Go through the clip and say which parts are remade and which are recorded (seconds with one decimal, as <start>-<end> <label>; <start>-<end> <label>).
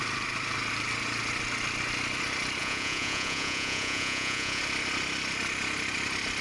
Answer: 0.0-2.6 recorded; 2.6-4.6 remade; 4.6-6.4 recorded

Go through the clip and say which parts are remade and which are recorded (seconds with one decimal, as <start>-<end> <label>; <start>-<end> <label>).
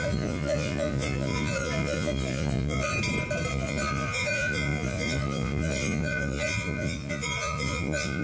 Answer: 0.0-2.9 remade; 2.9-3.5 recorded; 3.5-8.2 remade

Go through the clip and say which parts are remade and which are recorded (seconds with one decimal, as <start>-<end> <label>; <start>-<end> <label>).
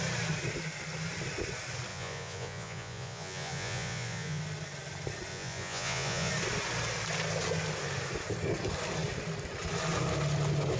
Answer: 0.0-1.9 recorded; 1.9-4.4 remade; 4.4-5.3 recorded; 5.3-6.3 remade; 6.3-10.8 recorded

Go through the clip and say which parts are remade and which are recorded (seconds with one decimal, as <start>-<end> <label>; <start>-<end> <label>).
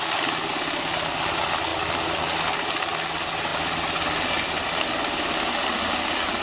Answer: 0.0-6.4 recorded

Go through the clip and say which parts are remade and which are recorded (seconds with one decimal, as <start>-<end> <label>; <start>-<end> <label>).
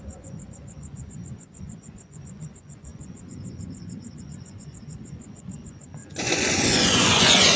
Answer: 0.0-7.6 remade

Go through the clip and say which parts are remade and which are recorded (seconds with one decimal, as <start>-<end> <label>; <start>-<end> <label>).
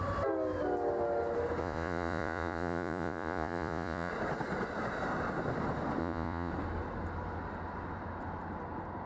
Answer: 0.0-1.6 recorded; 1.6-4.1 remade; 4.1-6.0 recorded; 6.0-6.5 remade; 6.5-9.1 recorded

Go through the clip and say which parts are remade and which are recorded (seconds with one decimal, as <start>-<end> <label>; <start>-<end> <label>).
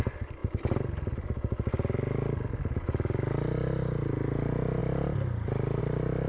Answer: 0.0-6.3 recorded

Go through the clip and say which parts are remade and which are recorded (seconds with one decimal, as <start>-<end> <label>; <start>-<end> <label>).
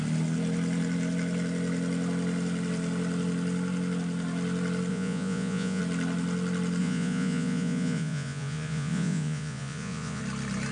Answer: 0.0-4.9 recorded; 4.9-5.8 remade; 5.8-6.8 recorded; 6.8-10.2 remade; 10.2-10.7 recorded